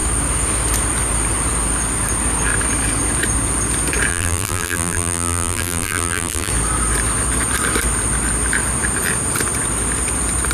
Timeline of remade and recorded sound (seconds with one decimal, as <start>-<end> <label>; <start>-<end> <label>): 0.0-4.1 recorded; 4.1-6.5 remade; 6.5-10.5 recorded